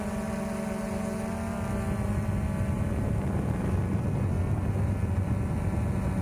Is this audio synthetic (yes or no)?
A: no